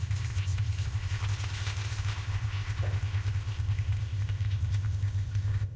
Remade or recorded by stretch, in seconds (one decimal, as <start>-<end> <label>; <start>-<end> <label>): 0.0-5.8 remade